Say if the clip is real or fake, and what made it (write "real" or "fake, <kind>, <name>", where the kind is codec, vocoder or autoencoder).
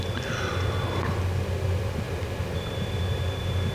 fake, vocoder, BigVGAN v2